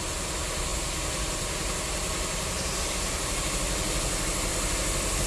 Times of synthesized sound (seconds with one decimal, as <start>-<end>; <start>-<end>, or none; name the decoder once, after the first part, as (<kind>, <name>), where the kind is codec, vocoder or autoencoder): 4.5-5.3 (vocoder, BigVGAN v2)